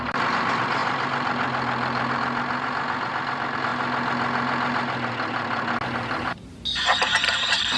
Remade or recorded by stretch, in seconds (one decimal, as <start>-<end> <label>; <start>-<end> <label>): 0.0-7.8 recorded